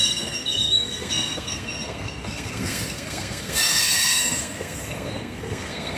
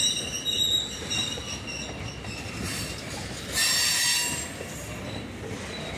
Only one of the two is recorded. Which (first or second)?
second